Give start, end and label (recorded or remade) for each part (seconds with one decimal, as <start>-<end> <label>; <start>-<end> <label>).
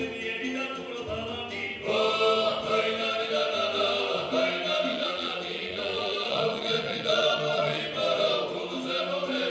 0.0-4.9 recorded; 4.9-7.8 remade; 7.8-9.5 recorded